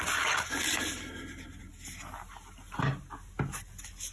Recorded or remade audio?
recorded